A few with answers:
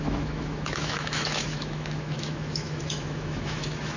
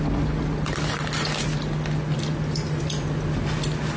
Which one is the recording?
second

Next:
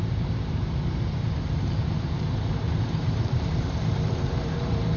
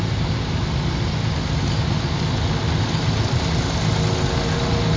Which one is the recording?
second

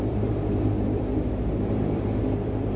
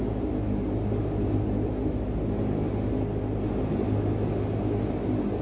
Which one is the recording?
second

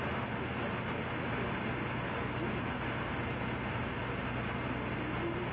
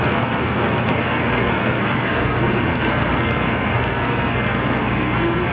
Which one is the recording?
first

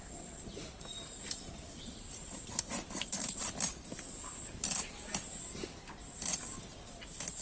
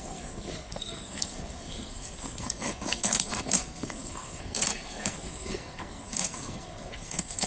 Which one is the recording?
first